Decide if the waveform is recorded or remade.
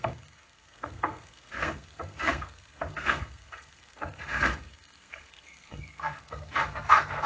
remade